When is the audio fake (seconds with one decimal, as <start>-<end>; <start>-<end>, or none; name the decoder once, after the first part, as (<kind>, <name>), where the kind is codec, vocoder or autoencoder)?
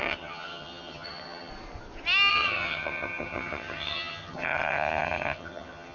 0.0-1.5 (vocoder, HiFi-GAN); 2.3-5.9